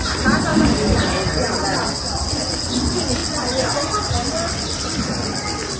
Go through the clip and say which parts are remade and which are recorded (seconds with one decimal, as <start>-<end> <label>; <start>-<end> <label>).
0.0-5.8 recorded